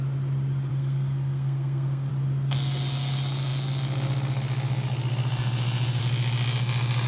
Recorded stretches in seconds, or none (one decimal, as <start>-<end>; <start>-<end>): 0.0-0.7; 2.1-7.1